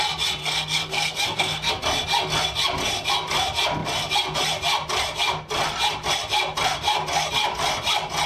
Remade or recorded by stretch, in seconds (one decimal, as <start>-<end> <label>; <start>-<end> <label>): 0.0-0.4 recorded; 0.4-1.7 remade; 1.7-8.3 recorded